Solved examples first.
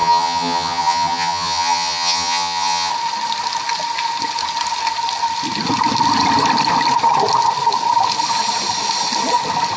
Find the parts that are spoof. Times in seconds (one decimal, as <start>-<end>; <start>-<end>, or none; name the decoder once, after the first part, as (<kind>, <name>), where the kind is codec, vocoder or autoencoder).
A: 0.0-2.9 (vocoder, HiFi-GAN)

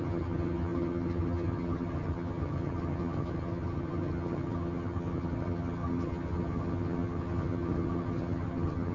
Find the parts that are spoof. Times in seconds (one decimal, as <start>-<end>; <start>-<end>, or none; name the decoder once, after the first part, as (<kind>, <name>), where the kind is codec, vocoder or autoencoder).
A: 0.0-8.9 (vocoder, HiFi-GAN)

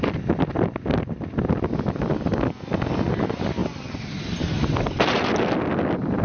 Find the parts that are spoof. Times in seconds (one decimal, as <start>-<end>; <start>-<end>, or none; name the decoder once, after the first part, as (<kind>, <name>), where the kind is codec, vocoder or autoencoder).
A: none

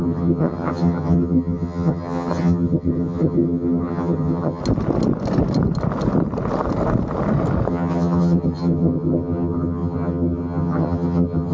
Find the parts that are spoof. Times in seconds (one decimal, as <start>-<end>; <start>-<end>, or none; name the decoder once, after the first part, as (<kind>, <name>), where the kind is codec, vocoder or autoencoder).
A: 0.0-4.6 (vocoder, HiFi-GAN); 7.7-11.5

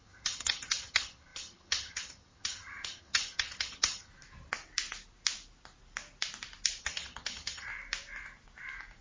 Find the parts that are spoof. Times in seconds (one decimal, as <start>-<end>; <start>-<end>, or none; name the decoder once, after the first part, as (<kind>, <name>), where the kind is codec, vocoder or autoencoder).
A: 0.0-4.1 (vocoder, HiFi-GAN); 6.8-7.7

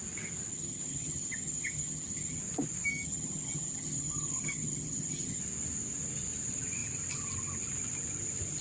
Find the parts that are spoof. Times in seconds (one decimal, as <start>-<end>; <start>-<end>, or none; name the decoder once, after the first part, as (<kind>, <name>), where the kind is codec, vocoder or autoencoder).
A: 0.5-2.4 (vocoder, HiFi-GAN); 2.9-5.4

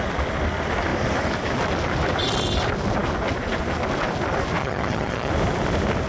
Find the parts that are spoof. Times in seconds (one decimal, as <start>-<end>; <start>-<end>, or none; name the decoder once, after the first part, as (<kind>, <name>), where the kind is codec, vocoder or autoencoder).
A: 4.6-5.3 (vocoder, HiFi-GAN)